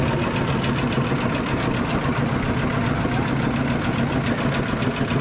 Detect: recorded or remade recorded